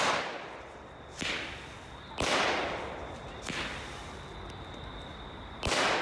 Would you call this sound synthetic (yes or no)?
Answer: no